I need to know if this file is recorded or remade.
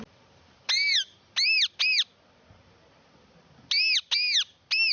recorded